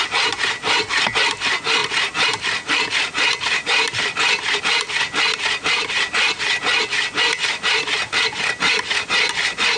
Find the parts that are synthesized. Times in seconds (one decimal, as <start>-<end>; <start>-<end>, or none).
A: none